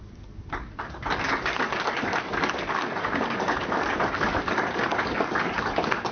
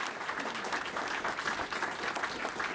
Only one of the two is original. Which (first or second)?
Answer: second